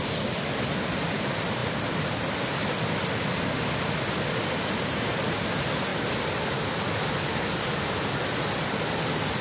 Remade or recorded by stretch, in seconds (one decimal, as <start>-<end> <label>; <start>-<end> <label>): 0.0-9.4 recorded

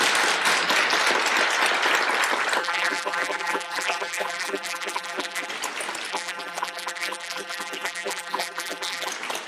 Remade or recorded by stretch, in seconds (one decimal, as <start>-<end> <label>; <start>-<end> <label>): 0.0-2.6 recorded; 2.6-5.5 remade; 5.5-6.1 recorded; 6.1-9.1 remade; 9.1-9.5 recorded

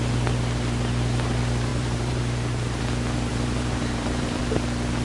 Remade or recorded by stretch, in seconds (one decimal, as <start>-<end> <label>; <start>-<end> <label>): 0.0-1.7 recorded; 1.7-2.8 remade; 2.8-3.3 recorded; 3.3-4.4 remade; 4.4-5.0 recorded

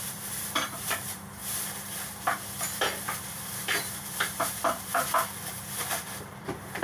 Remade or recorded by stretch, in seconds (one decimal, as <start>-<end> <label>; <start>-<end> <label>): 0.0-6.8 remade